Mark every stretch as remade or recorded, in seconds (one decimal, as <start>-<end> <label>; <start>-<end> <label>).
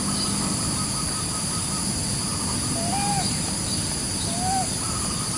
0.0-5.4 recorded